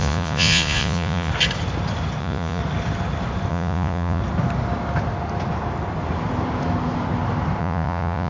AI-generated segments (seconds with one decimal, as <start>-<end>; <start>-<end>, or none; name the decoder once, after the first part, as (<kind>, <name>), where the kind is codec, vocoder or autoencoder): 0.0-1.3 (vocoder, Vocos); 2.2-2.6; 3.5-4.2; 7.6-8.3